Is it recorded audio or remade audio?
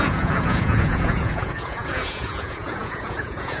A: remade